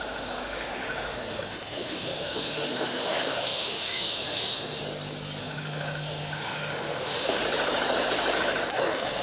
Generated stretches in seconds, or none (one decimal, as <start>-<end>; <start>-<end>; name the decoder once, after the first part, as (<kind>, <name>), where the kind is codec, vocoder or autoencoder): 0.0-4.8 (autoencoder, DAC-VAE); 5.4-7.4; 8.7-9.2